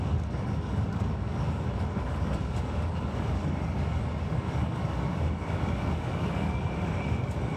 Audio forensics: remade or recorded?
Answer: remade